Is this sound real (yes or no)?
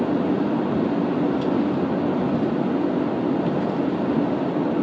yes